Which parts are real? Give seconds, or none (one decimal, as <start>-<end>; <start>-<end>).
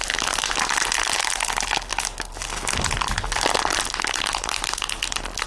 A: 0.0-5.5